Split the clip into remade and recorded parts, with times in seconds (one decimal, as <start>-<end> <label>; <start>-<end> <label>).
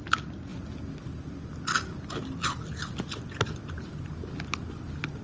0.0-5.2 recorded